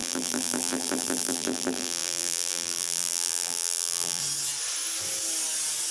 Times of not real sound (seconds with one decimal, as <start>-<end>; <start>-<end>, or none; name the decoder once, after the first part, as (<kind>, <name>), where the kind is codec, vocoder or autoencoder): 0.0-4.2 (vocoder, BigVGAN v2)